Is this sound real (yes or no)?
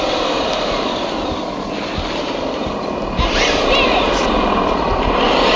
yes